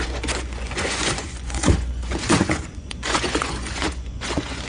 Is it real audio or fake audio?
fake